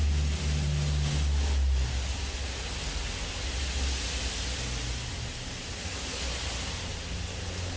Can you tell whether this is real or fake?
real